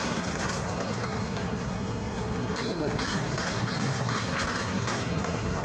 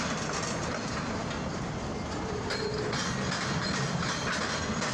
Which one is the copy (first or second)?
first